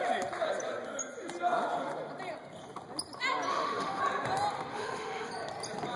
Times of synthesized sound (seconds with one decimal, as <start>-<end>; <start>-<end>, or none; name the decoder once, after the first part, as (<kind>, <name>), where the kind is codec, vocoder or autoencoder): 3.5-4.0 (autoencoder, DAC-VAE); 4.7-5.3